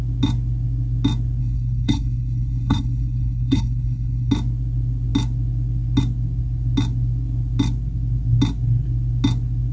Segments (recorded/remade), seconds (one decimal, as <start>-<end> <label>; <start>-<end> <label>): 0.0-1.4 recorded; 1.4-4.3 remade; 4.3-9.7 recorded